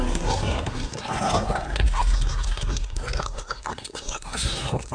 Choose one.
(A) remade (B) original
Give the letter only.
A